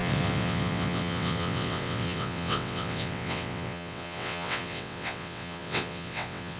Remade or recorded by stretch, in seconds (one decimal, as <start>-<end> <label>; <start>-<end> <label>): 0.0-6.6 remade